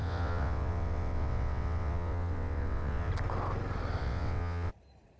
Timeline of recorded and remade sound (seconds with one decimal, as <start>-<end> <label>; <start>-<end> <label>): 0.0-3.1 remade; 3.1-4.0 recorded; 4.0-4.7 remade; 4.7-5.2 recorded